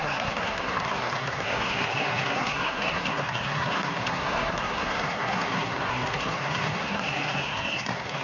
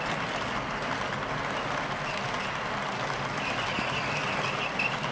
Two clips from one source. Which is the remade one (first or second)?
first